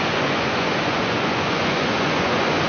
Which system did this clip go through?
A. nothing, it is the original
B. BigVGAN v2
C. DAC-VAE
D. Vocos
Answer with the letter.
D